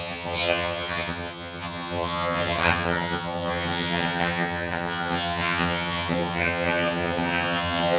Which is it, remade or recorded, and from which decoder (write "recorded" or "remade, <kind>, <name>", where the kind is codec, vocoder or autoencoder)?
remade, vocoder, HiFi-GAN